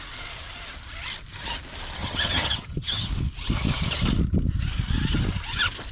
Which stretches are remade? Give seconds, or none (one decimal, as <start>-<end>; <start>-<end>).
2.0-3.1